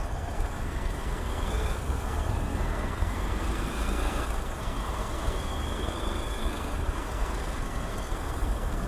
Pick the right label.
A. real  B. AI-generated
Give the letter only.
B